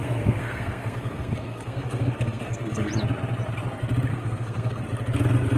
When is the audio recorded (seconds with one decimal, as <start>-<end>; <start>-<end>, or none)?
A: 2.9-4.1; 4.8-5.6